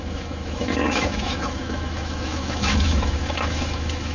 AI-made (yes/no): yes